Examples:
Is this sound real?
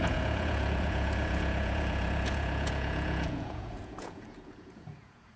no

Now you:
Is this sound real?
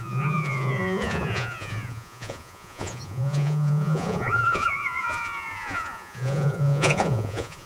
no